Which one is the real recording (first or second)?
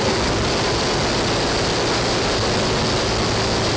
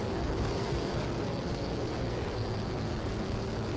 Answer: first